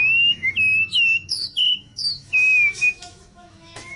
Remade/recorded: remade